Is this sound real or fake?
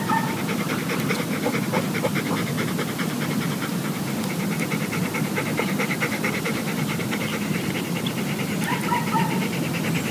real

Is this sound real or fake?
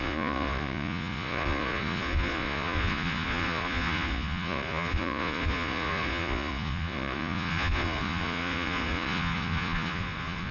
fake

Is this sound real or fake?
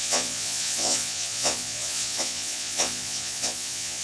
fake